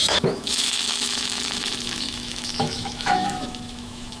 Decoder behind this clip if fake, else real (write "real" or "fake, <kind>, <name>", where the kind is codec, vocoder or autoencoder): fake, autoencoder, DAC-VAE